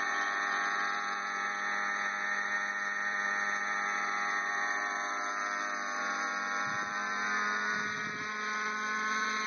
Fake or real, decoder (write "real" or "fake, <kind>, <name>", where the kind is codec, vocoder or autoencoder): real